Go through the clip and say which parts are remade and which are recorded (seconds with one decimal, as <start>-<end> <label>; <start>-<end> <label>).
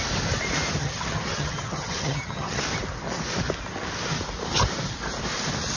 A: 0.0-0.8 recorded; 0.8-2.6 remade; 2.6-5.8 recorded